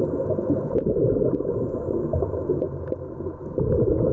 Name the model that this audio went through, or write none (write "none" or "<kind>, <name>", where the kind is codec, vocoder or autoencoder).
none